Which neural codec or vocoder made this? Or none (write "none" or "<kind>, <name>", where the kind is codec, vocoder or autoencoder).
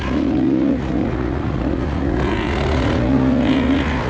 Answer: vocoder, Vocos